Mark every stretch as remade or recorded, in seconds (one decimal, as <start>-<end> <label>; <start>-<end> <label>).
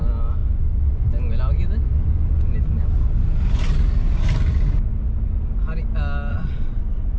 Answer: 0.0-6.3 recorded; 6.3-6.8 remade; 6.8-7.2 recorded